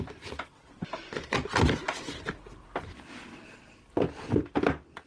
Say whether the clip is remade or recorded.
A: recorded